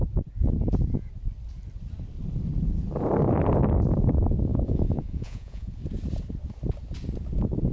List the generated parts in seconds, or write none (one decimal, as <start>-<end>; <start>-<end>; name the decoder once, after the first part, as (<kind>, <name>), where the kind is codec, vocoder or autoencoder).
4.5-5.8 (vocoder, Vocos)